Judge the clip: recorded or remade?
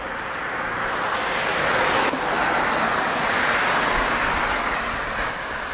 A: recorded